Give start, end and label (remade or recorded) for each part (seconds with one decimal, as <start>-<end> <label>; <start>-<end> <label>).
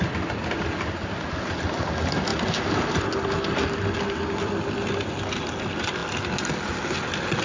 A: 0.0-7.4 recorded